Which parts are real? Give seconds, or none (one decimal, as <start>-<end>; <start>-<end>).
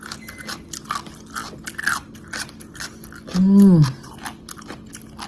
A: 0.0-5.3